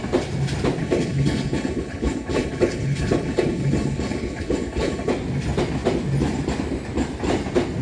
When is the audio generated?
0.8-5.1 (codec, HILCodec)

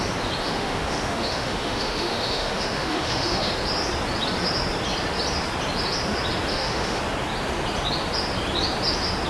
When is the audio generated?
0.4-3.5 (autoencoder, DAC-VAE); 6.5-7.0

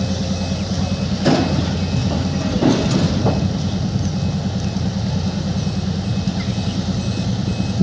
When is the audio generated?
none